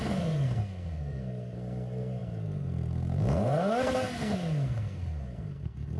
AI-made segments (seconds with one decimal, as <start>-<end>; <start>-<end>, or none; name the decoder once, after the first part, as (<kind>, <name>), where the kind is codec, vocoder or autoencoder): 0.0-6.0 (codec, SNAC)